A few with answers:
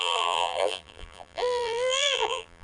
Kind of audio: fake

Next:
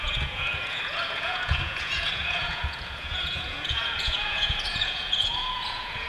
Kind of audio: fake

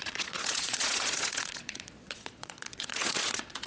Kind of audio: fake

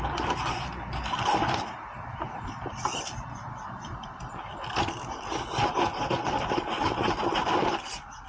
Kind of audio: real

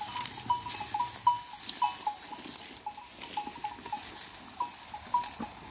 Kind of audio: real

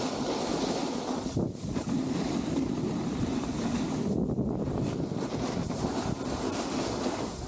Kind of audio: real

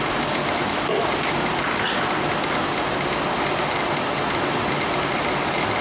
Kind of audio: real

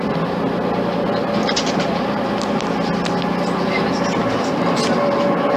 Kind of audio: real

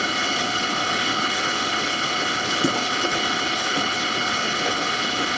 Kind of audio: fake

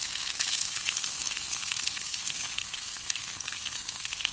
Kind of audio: fake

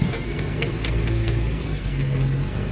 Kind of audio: fake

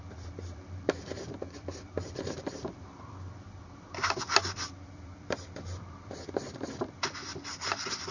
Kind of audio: fake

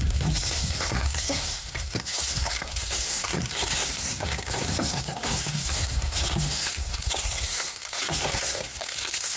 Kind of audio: fake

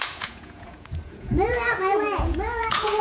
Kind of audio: fake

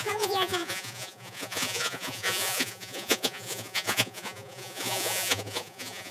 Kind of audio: fake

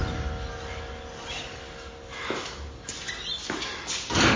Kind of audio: real